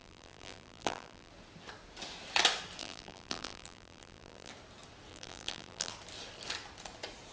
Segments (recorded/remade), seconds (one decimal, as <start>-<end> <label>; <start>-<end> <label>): 0.0-1.3 remade; 1.3-2.8 recorded; 2.8-4.5 remade; 4.5-5.1 recorded; 5.1-5.9 remade; 5.9-7.3 recorded